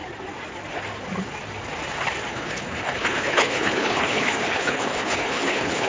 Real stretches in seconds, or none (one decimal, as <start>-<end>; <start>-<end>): 0.0-2.3